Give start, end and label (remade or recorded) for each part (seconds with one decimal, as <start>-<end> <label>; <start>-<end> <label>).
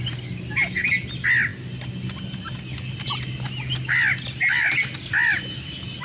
0.0-6.0 recorded